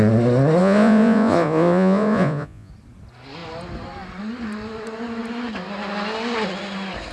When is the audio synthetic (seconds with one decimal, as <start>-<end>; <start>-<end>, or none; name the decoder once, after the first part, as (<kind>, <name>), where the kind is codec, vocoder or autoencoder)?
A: 0.6-2.7 (vocoder, Vocos)